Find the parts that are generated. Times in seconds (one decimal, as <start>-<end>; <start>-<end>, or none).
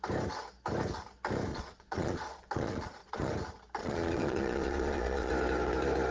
1.5-3.3; 3.8-5.3